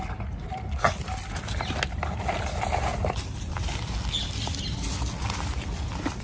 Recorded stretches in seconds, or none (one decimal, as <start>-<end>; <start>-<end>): 0.0-6.2